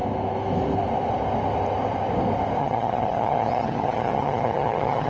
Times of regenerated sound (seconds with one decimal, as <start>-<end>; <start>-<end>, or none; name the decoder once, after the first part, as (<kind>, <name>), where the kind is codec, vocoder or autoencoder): 2.6-5.1 (vocoder, HiFi-GAN)